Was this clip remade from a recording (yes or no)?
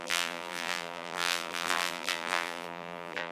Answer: yes